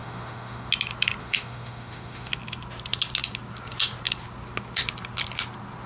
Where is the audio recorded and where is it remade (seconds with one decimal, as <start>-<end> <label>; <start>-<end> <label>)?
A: 0.0-0.7 remade; 0.7-1.2 recorded; 1.2-2.3 remade; 2.3-5.9 recorded